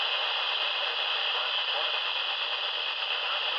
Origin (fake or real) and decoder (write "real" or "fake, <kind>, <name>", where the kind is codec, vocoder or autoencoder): real